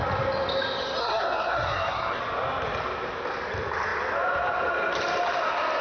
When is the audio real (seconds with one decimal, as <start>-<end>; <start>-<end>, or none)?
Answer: 0.0-1.0; 2.2-5.8